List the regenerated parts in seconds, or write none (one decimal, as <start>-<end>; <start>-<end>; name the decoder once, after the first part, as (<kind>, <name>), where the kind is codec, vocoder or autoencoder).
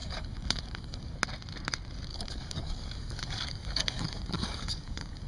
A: 0.0-1.2 (codec, DAC); 2.1-5.3